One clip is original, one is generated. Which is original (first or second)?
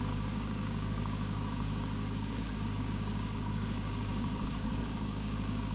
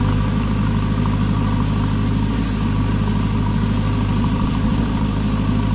second